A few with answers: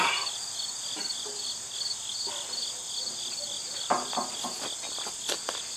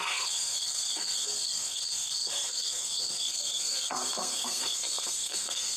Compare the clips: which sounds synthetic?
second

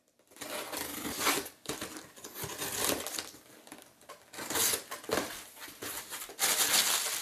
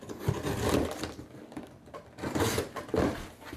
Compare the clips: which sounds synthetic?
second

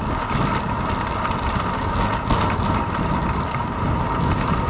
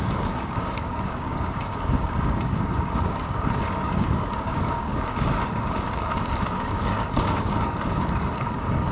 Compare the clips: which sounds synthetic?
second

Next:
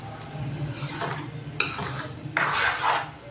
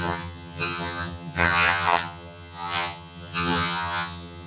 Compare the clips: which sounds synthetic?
second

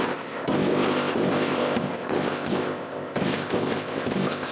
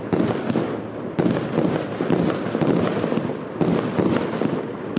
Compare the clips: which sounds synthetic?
first